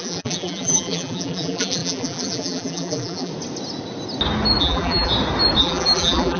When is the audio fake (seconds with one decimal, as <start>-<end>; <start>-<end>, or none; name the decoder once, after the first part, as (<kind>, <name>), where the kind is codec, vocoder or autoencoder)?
0.0-3.3 (vocoder, BigVGAN v2); 4.6-5.1; 5.6-6.4